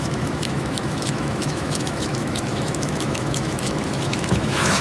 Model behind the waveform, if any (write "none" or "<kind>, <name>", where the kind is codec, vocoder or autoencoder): autoencoder, DAC-VAE